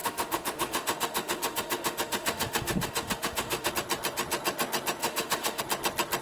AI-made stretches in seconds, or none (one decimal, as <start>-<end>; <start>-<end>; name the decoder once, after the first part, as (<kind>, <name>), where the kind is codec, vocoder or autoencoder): 0.0-3.7 (autoencoder, DAC-VAE); 5.0-5.6